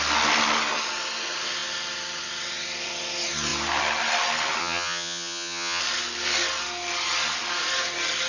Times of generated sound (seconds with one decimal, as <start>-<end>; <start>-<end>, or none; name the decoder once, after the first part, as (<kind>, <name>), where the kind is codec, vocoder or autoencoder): 4.6-5.8 (vocoder, HiFi-GAN)